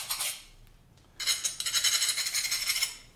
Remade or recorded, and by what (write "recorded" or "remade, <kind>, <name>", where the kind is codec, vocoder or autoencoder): recorded